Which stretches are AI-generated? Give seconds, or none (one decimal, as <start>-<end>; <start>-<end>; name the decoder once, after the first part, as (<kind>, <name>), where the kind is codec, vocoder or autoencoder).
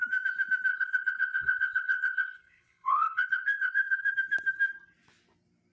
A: 0.7-4.1 (codec, HILCodec)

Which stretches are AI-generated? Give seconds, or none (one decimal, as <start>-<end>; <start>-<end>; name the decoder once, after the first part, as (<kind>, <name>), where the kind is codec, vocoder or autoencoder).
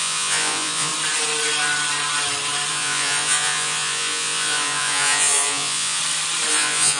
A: 0.0-0.9 (vocoder, Vocos); 2.7-6.0; 6.5-7.0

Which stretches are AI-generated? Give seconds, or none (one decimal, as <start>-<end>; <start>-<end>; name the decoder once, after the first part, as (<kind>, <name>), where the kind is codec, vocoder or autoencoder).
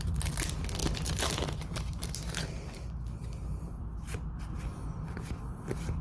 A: none